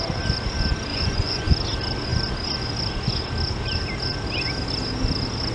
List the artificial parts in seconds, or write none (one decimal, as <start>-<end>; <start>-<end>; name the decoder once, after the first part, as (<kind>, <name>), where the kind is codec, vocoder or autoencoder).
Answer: 0.9-1.5 (vocoder, Vocos)